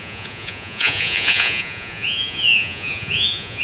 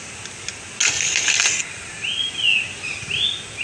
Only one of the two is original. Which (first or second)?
second